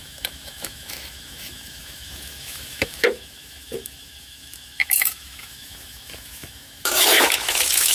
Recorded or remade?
remade